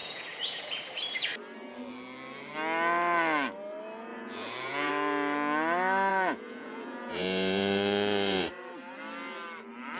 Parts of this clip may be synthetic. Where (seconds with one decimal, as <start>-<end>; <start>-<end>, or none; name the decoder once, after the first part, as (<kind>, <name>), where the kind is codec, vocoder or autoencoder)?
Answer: 0.0-0.8 (vocoder, Vocos); 4.1-4.9; 6.1-8.5